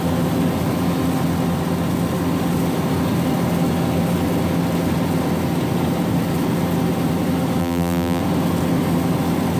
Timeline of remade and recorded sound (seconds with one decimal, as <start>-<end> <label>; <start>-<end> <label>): 0.0-7.6 recorded; 7.6-8.2 remade; 8.2-9.6 recorded